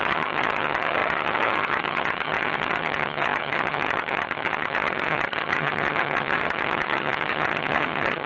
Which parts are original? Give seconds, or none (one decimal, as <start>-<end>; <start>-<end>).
none